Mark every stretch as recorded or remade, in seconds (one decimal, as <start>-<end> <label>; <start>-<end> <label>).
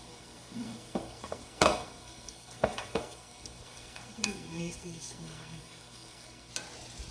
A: 0.0-6.5 remade; 6.5-7.1 recorded